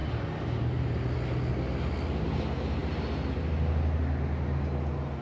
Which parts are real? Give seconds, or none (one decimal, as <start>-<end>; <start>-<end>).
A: 0.0-5.2